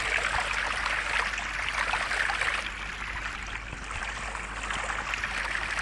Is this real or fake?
real